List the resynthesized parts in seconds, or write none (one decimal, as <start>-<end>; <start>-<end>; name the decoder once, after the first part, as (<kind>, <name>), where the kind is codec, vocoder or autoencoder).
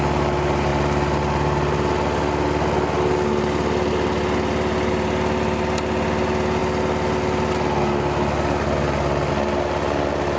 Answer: none